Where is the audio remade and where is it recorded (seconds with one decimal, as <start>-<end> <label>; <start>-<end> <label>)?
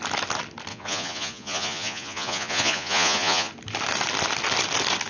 0.0-0.7 recorded; 0.7-3.5 remade; 3.5-5.1 recorded